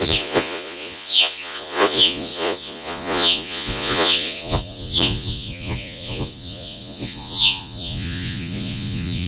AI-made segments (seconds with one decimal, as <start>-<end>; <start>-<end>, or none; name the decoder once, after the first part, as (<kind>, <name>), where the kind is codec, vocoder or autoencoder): 0.0-9.3 (vocoder, Vocos)